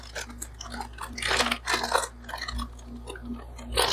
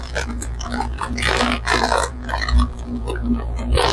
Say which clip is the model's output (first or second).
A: second